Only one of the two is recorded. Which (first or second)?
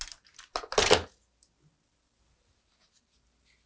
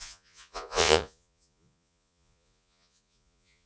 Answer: first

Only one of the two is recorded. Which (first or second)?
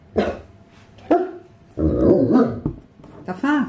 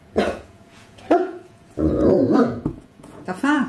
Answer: first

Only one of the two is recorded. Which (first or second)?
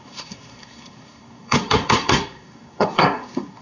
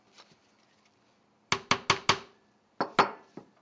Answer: second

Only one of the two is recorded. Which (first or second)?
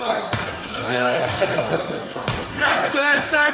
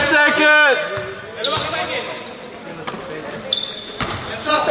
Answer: second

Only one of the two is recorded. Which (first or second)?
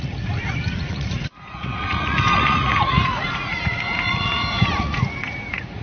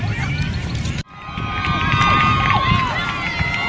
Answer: second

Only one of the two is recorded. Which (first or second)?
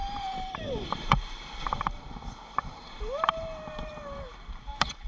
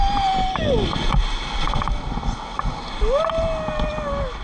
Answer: second